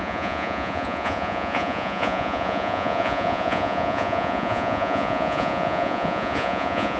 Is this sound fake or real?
fake